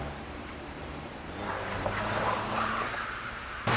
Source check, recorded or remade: remade